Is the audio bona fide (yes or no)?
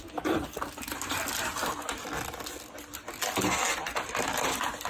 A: yes